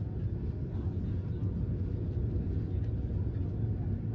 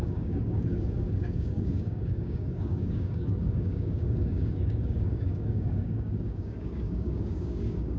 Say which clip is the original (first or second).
first